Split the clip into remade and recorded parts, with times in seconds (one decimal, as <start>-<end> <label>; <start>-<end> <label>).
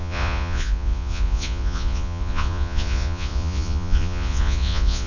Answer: 0.0-5.1 remade